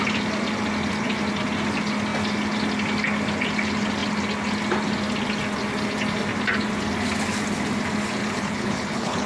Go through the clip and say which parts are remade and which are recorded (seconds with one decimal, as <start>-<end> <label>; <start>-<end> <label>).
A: 0.0-8.2 recorded; 8.2-9.3 remade